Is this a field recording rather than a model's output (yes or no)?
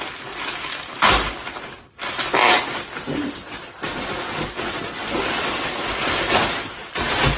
yes